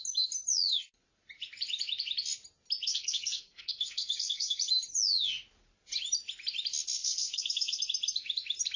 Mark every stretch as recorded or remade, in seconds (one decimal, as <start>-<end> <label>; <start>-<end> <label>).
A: 0.0-2.9 recorded; 2.9-4.6 remade; 4.6-7.0 recorded; 7.0-7.8 remade; 7.8-8.8 recorded